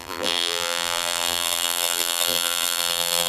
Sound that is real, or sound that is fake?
fake